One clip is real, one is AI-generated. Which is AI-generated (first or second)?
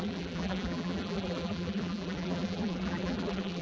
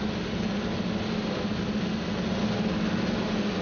first